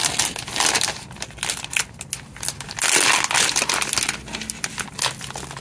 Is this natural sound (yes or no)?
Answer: yes